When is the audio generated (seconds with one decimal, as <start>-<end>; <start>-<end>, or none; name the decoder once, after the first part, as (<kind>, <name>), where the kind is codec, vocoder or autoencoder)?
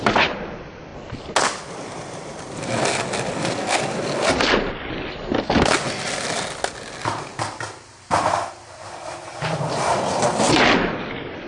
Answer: none